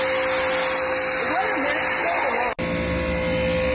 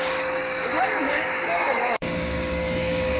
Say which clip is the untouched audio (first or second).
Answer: first